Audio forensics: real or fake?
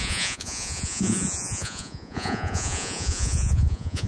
fake